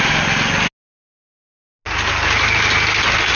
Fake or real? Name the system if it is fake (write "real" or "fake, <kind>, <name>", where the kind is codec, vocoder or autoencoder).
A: real